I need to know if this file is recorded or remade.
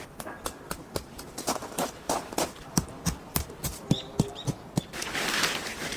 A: recorded